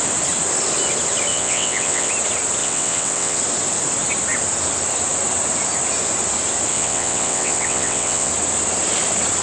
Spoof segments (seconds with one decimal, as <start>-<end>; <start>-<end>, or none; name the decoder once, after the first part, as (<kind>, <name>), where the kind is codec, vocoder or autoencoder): 1.3-2.1 (vocoder, WaveNeXt); 2.6-3.4; 6.7-8.3

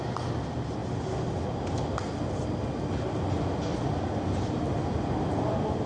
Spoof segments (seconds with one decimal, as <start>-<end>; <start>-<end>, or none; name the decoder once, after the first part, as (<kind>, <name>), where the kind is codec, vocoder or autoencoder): none

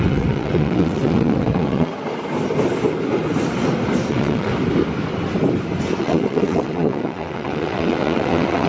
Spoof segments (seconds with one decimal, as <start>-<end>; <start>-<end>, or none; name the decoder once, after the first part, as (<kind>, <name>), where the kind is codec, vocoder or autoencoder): 0.0-1.9 (vocoder, WaveNeXt); 4.1-4.5; 6.0-8.7

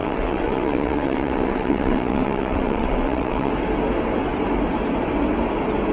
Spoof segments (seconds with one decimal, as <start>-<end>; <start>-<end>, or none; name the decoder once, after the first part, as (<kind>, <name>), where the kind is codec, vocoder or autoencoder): 0.0-3.5 (vocoder, WaveNeXt)

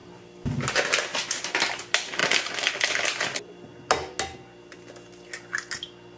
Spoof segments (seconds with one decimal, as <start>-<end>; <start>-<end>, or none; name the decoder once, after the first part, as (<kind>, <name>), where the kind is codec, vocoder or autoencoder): none